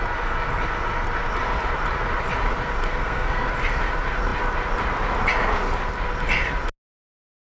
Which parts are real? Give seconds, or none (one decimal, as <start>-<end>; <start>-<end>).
0.0-2.9; 3.5-7.5